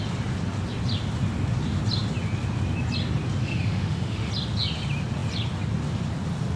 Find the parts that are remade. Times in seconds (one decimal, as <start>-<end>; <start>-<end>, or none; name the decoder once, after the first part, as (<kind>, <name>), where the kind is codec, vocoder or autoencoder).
3.4-4.3 (autoencoder, DAC-VAE)